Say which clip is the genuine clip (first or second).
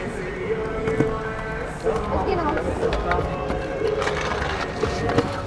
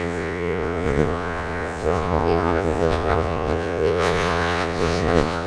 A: first